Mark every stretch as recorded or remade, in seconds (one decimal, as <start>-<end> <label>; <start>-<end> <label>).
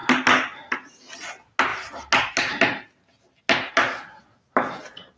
0.0-5.2 recorded